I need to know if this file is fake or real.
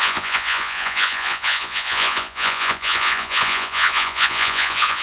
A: fake